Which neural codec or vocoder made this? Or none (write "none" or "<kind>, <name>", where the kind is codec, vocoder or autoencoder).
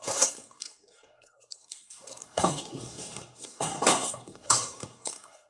codec, SNAC